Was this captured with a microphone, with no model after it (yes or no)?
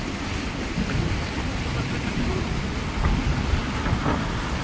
yes